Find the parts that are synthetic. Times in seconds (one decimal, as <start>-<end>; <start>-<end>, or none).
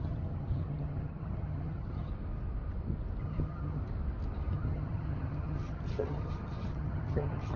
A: 0.0-2.1; 3.2-3.8; 4.5-7.6